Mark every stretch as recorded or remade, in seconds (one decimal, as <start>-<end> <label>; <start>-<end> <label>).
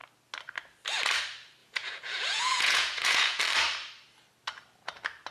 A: 0.0-1.6 recorded; 1.6-3.4 remade; 3.4-5.3 recorded